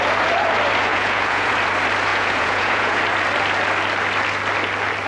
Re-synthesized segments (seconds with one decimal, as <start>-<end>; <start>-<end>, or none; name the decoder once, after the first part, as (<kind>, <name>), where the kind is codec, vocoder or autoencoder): 0.9-1.5 (vocoder, Vocos); 2.1-3.0